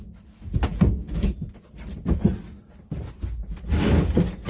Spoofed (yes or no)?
no